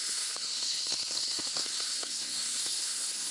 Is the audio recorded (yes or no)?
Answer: no